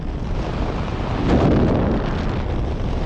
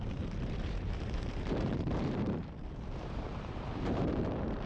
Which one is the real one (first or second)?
first